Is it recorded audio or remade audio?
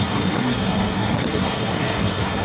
remade